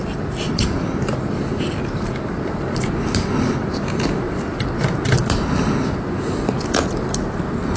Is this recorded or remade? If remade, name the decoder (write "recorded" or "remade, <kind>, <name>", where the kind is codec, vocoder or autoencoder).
recorded